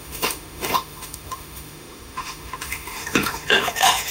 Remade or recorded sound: remade